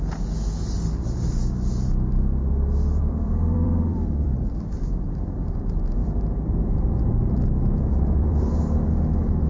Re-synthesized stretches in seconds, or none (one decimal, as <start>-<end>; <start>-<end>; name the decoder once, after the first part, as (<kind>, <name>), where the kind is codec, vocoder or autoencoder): 3.0-5.6 (vocoder, BigVGAN v2); 6.0-8.5